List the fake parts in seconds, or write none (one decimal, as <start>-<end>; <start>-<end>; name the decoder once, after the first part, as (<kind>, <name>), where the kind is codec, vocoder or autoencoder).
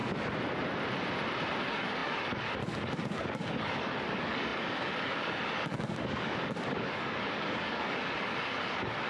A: 1.6-9.1 (codec, DAC)